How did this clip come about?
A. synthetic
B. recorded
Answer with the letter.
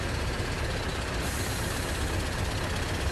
B